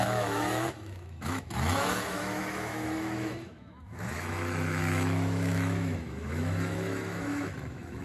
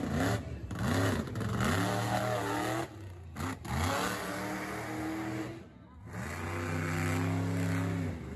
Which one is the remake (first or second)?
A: first